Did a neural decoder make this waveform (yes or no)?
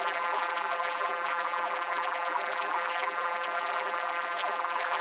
yes